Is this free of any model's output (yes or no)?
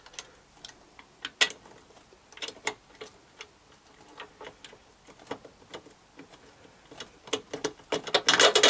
yes